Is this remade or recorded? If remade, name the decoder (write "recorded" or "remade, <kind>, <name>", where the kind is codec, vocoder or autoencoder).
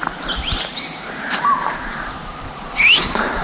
remade, vocoder, BigVGAN v2